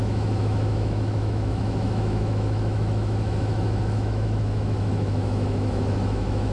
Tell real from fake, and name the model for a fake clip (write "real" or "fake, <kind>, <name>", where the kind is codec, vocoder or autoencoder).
fake, autoencoder, DAC-VAE